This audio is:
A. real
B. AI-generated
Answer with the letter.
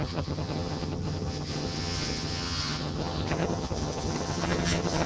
B